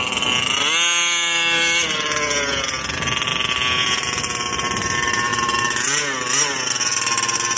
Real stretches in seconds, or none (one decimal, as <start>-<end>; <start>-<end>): 0.0-7.6